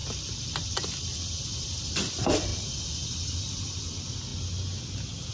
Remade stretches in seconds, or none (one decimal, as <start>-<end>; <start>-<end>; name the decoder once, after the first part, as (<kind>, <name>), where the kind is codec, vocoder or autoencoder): 0.0-4.3 (vocoder, BigVGAN v2); 4.8-5.3